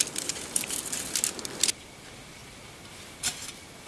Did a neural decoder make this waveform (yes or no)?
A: no